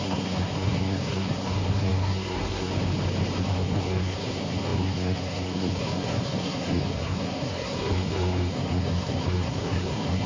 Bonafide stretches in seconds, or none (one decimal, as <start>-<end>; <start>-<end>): 2.7-3.4